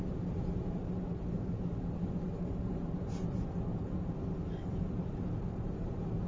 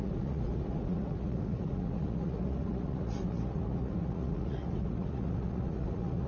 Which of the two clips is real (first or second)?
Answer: first